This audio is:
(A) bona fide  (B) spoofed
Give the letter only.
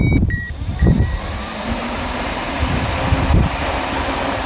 B